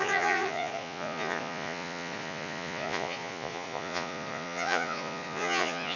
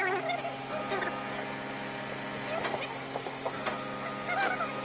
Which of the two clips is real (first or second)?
second